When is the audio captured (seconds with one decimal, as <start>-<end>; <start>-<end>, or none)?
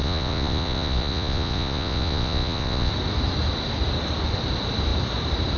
2.9-5.6